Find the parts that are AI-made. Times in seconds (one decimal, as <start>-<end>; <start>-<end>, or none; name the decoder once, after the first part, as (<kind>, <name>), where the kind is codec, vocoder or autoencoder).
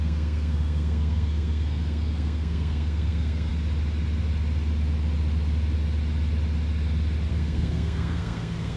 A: 0.0-3.5 (codec, SNAC); 7.3-8.8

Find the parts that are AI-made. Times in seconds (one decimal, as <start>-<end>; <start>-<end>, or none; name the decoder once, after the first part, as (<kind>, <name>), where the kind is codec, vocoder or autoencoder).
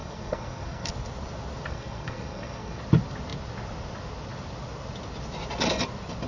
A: 0.0-0.9 (codec, SNAC); 1.7-2.8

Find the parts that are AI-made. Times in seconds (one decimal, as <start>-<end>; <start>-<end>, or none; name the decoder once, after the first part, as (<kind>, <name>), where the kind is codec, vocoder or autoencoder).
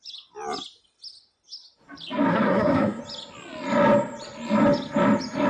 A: 2.3-3.0 (codec, SNAC)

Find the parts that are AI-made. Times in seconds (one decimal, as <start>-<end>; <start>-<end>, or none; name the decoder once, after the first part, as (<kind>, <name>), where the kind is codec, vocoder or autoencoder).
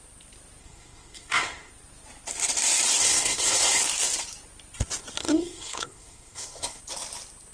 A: 0.6-1.7 (codec, SNAC); 3.0-3.8; 5.2-6.8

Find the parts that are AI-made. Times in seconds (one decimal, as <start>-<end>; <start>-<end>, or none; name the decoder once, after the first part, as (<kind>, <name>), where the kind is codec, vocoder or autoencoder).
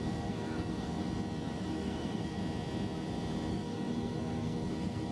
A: 0.0-1.0 (codec, SNAC); 1.6-2.4; 3.5-5.1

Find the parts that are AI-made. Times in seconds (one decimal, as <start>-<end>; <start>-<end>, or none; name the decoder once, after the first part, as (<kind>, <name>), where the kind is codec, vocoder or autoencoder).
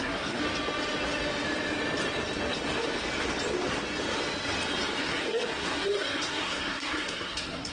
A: 0.0-0.4 (codec, SNAC); 5.0-7.7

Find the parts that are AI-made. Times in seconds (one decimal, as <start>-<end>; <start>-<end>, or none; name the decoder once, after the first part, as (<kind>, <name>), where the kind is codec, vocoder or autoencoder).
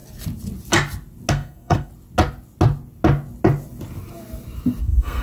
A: 1.3-1.9 (codec, SNAC); 4.8-5.2